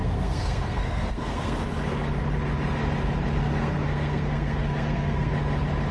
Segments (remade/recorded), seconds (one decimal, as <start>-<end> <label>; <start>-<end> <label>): 0.0-1.6 remade; 1.6-3.4 recorded; 3.4-5.3 remade; 5.3-5.9 recorded